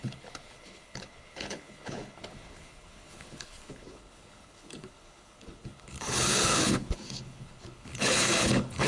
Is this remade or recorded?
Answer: remade